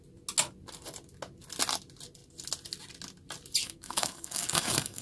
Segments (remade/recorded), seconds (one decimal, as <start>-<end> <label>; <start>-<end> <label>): 0.0-3.6 recorded; 3.6-5.0 remade